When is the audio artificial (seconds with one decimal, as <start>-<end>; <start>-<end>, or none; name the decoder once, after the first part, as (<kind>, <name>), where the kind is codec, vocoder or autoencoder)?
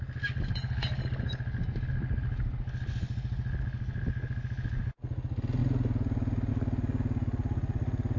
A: none